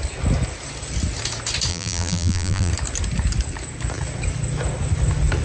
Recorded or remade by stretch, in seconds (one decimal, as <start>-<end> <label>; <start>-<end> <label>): 0.0-1.7 recorded; 1.7-2.7 remade; 2.7-5.4 recorded